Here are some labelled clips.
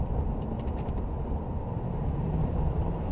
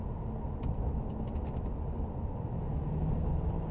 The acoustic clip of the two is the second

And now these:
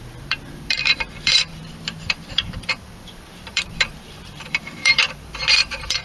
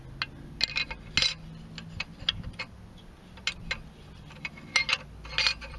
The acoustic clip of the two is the second